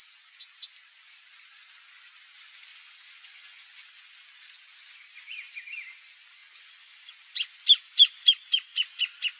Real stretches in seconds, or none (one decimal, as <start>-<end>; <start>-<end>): 0.0-2.7; 3.9-6.4; 7.0-9.4